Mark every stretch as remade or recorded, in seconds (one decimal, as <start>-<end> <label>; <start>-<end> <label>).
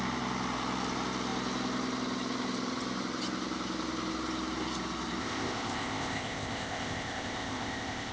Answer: 0.0-5.2 recorded; 5.2-8.1 remade